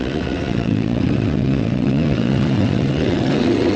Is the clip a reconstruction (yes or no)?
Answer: yes